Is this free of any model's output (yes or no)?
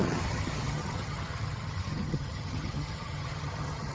no